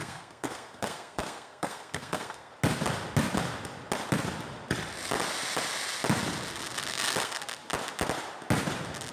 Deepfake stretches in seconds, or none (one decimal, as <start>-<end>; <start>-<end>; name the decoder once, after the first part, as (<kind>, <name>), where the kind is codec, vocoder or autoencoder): 0.0-2.5 (codec, SNAC); 6.9-7.4